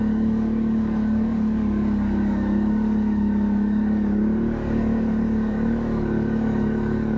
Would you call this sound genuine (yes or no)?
no